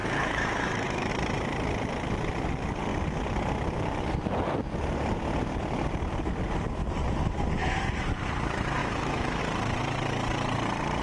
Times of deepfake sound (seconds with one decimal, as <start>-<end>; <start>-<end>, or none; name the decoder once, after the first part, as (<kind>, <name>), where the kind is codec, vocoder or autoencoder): 0.0-1.1 (autoencoder, DAC-VAE); 8.8-9.4